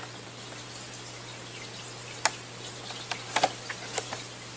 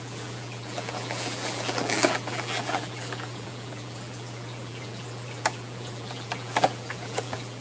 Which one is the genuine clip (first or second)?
first